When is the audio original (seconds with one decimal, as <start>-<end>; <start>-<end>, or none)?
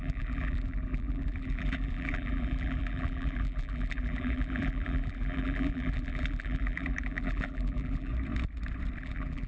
8.1-9.0